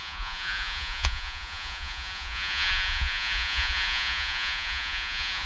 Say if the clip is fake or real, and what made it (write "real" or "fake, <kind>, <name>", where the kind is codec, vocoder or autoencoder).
fake, vocoder, Vocos